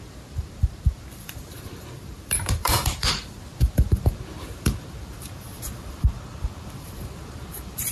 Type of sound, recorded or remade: remade